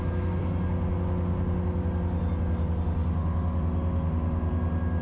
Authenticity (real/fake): real